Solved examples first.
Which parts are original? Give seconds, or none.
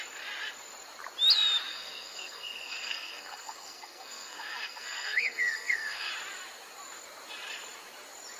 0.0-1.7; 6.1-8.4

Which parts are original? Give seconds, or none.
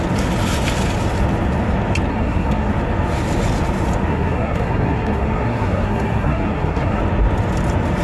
0.0-2.1; 2.7-4.1; 7.0-8.0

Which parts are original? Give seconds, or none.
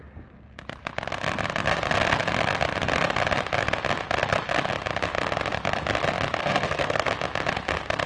0.0-6.4; 7.1-8.1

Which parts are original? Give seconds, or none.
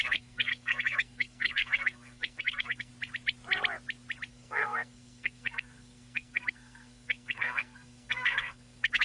2.9-4.3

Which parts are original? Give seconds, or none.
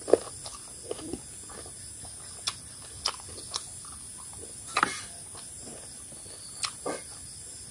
0.0-7.7